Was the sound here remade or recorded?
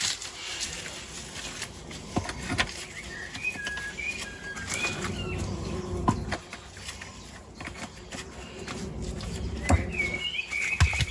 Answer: recorded